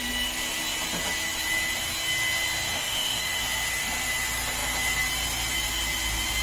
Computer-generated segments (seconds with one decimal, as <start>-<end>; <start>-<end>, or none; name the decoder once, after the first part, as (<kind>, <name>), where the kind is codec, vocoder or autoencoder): 2.7-3.4 (autoencoder, DAC-VAE)